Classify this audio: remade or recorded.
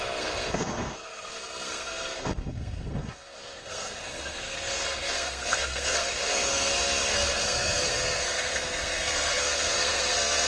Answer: remade